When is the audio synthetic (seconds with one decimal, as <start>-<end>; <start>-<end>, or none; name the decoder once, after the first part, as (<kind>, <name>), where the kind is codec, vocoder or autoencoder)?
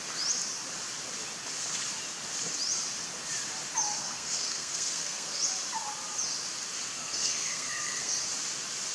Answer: 4.0-5.4 (codec, SNAC); 7.0-8.1